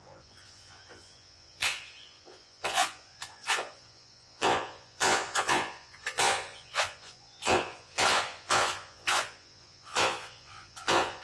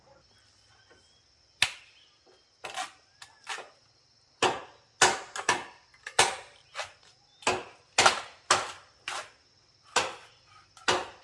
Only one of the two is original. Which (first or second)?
second